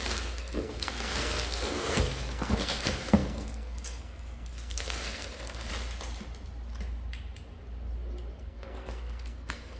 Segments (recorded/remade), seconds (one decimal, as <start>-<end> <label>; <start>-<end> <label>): 0.0-5.7 remade; 5.7-8.4 recorded; 8.4-9.8 remade